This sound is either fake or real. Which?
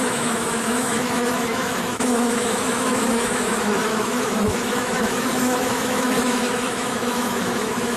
fake